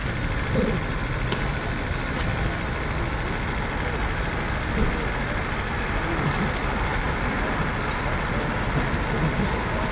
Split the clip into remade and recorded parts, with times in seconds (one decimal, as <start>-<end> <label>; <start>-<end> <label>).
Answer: 0.0-9.9 recorded